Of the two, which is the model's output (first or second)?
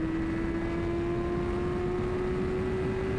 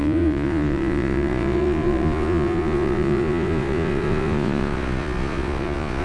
second